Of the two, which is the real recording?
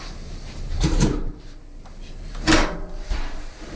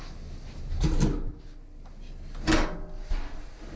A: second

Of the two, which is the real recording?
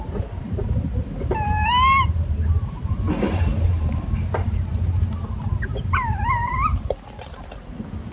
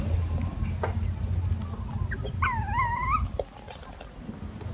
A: second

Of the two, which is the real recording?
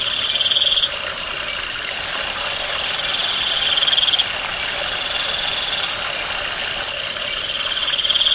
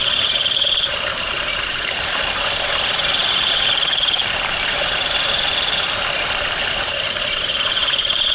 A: first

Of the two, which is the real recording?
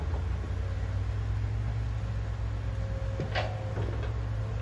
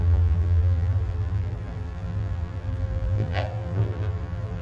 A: first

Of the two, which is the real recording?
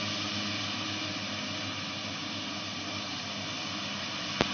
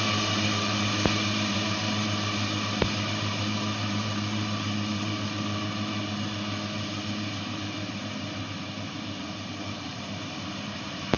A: first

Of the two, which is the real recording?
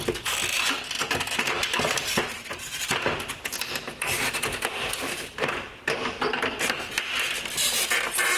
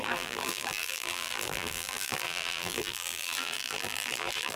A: first